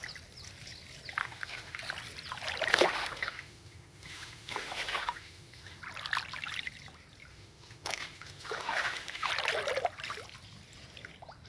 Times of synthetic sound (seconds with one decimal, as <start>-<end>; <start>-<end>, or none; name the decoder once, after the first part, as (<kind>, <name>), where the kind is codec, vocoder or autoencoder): 1.2-1.8 (autoencoder, DAC-VAE); 2.7-5.8; 7.3-9.3